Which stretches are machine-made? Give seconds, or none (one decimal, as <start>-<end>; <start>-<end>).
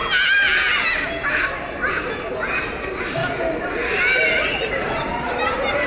none